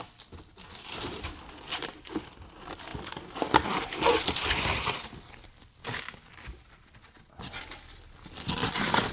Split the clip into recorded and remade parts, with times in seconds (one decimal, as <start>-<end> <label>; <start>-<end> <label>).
0.0-5.8 recorded; 5.8-6.3 remade; 6.3-9.1 recorded